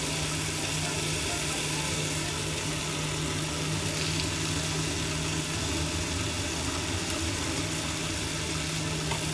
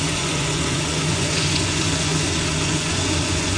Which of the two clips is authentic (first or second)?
first